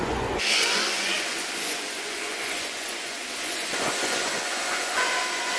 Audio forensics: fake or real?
fake